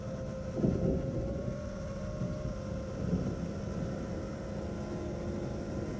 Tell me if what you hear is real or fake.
real